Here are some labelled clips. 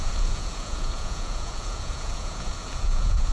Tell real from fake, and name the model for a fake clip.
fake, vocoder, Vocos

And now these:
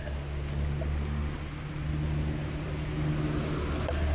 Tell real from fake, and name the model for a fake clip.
real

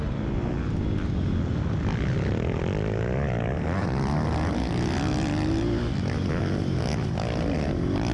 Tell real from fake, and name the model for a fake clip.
real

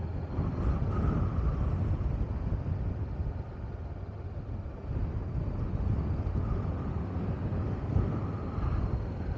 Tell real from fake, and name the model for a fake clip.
real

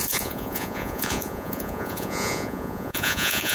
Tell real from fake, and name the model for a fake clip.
fake, vocoder, Vocos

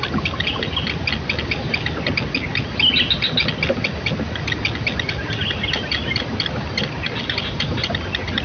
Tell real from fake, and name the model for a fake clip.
real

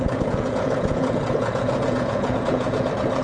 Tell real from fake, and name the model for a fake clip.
fake, vocoder, Vocos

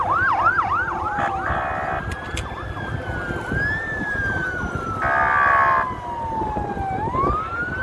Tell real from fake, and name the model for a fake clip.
real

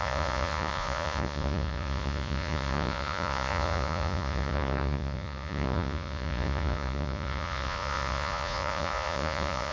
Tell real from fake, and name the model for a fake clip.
fake, vocoder, Vocos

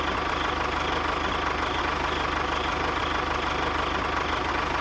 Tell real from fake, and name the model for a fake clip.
real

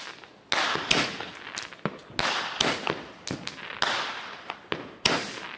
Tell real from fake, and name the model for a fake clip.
real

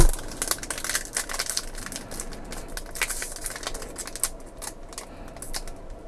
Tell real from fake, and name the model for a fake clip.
real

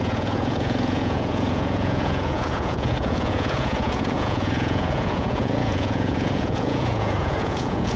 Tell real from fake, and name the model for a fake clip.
fake, vocoder, Vocos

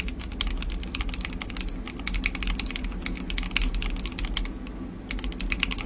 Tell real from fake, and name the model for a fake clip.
real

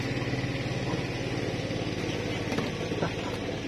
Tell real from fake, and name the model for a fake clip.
real